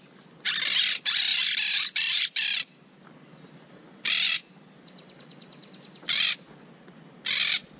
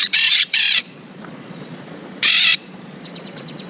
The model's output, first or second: second